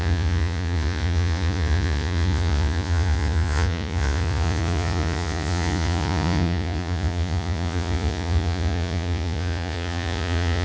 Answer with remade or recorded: remade